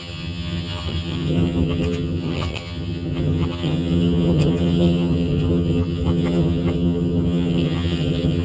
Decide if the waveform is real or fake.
fake